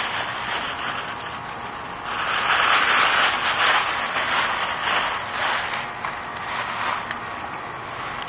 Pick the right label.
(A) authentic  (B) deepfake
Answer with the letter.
A